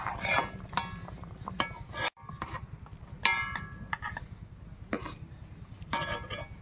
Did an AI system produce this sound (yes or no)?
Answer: no